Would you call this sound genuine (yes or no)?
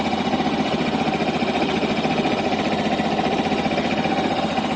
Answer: yes